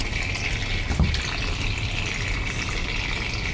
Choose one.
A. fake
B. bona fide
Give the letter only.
B